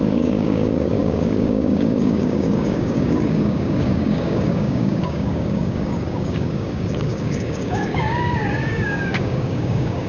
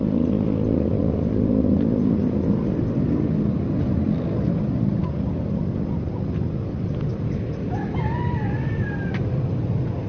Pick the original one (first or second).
second